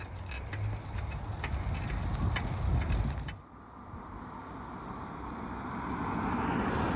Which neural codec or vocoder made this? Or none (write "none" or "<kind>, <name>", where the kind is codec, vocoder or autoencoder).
none